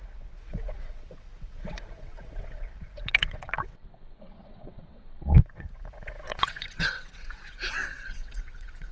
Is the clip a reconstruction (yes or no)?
yes